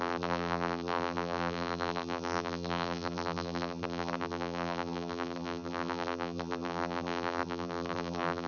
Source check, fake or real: fake